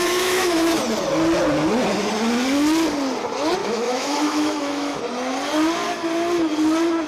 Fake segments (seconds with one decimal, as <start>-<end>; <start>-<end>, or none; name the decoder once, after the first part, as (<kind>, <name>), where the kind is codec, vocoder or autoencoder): 0.0-0.8 (autoencoder, DAC-VAE); 3.6-5.0